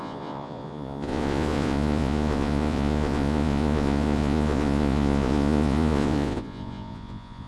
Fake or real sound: fake